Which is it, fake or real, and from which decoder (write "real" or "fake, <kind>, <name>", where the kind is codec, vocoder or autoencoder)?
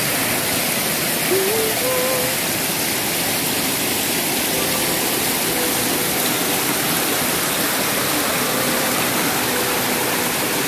real